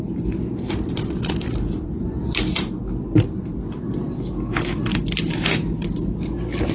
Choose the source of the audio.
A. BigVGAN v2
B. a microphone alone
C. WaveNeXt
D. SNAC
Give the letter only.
B